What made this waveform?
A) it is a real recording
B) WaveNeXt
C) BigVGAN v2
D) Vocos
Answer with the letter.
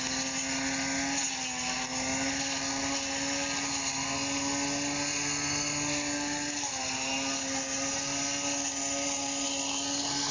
A